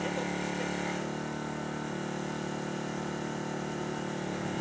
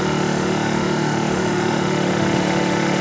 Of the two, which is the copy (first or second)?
second